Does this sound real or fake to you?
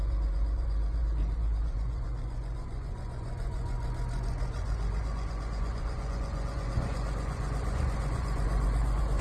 fake